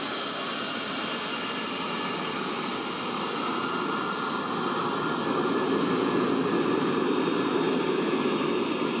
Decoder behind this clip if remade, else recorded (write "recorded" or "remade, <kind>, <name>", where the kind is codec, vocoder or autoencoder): remade, vocoder, BigVGAN v2